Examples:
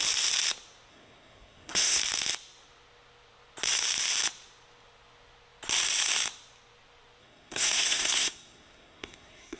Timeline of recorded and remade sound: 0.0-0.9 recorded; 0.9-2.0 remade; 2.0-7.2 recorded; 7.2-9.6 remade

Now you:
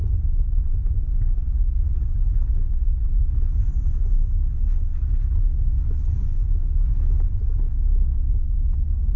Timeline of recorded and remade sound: 0.0-9.2 recorded

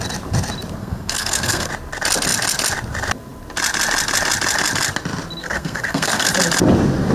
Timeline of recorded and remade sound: 0.0-0.8 recorded; 0.8-1.7 remade; 1.7-5.4 recorded; 5.4-6.3 remade; 6.3-7.1 recorded

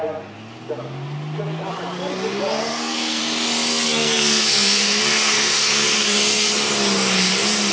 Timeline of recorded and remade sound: 0.0-2.5 recorded; 2.5-3.2 remade; 3.2-3.7 recorded; 3.7-6.5 remade; 6.5-7.7 recorded

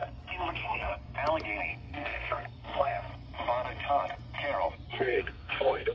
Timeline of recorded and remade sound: 0.0-0.5 recorded; 0.5-0.9 remade; 0.9-1.7 recorded; 1.7-3.1 remade; 3.1-4.9 recorded; 4.9-5.9 remade

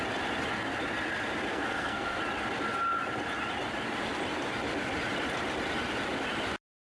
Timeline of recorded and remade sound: 0.0-1.5 recorded; 1.5-2.2 remade; 2.2-6.8 recorded

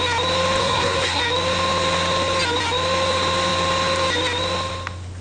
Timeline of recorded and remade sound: 0.0-0.6 recorded; 0.6-1.2 remade; 1.2-5.2 recorded

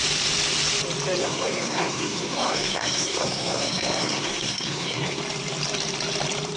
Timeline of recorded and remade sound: 0.0-1.2 recorded; 1.2-5.2 remade; 5.2-6.6 recorded